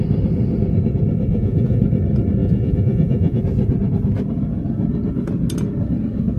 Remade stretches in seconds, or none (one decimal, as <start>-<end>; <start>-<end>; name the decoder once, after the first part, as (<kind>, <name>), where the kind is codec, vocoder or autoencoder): 1.3-1.8 (vocoder, Vocos); 2.4-3.4